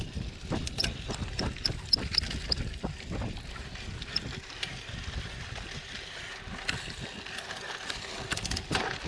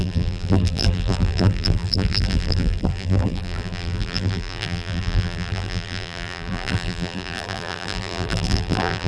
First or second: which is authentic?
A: first